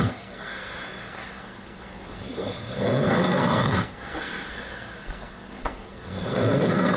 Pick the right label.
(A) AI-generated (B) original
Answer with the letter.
A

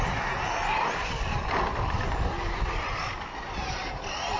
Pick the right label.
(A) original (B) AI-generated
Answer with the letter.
A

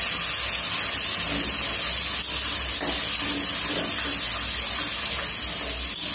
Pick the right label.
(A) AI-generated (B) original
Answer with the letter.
B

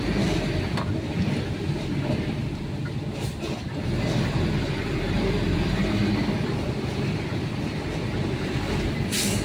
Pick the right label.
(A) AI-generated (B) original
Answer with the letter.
B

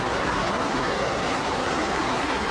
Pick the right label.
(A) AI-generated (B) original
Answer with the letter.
A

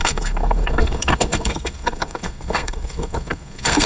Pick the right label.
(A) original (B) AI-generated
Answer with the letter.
B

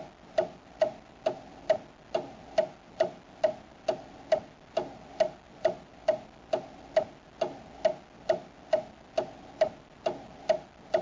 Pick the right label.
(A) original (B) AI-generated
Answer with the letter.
A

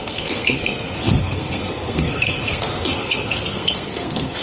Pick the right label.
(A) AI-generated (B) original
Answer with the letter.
A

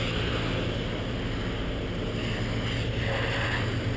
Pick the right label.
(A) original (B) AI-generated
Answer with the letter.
A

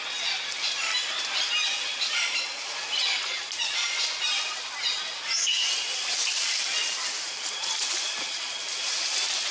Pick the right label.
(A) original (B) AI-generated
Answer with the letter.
A